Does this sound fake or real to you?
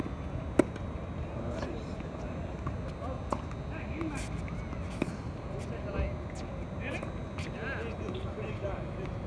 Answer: real